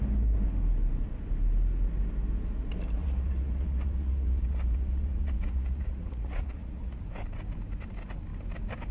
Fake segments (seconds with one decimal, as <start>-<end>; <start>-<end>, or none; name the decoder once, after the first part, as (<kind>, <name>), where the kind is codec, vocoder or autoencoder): 3.0-7.0 (vocoder, Vocos)